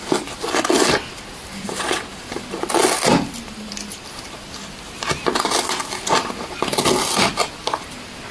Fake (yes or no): no